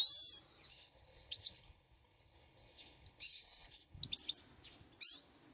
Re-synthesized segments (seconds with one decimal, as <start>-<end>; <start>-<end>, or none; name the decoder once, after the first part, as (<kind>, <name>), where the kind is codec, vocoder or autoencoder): 0.7-4.0 (codec, HILCodec)